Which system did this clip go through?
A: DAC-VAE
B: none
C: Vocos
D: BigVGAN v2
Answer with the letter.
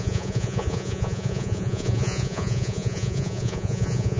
C